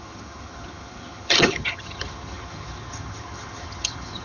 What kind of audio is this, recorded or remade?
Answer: remade